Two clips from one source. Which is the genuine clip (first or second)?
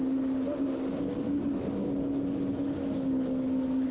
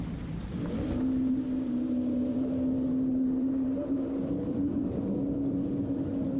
first